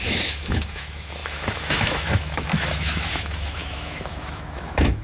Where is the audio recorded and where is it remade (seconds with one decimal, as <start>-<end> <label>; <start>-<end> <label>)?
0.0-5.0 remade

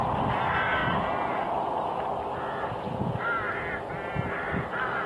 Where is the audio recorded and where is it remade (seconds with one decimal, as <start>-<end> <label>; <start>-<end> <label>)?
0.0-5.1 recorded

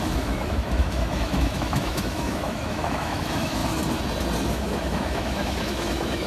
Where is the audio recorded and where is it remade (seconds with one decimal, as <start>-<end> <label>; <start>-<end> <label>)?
0.0-3.6 remade; 3.6-4.5 recorded; 4.5-6.3 remade

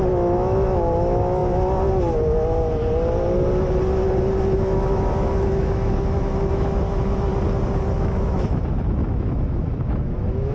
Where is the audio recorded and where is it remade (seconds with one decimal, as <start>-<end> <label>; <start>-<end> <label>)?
0.0-1.4 remade; 1.4-4.4 recorded; 4.4-7.3 remade; 7.3-7.9 recorded; 7.9-10.5 remade

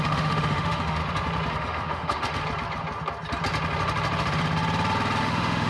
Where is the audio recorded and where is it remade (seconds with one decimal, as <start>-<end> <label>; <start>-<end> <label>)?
0.0-1.0 remade; 1.0-1.5 recorded; 1.5-2.4 remade; 2.4-5.2 recorded; 5.2-5.7 remade

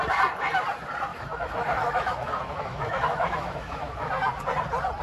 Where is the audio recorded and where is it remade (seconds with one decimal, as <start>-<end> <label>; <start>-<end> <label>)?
0.0-1.1 recorded; 1.1-4.1 remade; 4.1-5.0 recorded

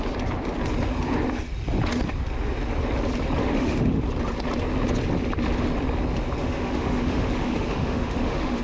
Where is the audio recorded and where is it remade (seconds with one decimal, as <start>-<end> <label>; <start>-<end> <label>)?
0.0-3.4 recorded; 3.4-4.0 remade; 4.0-6.4 recorded; 6.4-8.6 remade

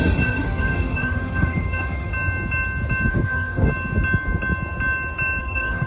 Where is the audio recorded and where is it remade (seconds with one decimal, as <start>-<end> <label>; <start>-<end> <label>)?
0.0-2.1 remade; 2.1-3.1 recorded; 3.1-3.7 remade; 3.7-5.4 recorded; 5.4-5.9 remade